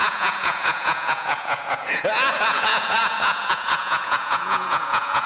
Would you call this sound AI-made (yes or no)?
yes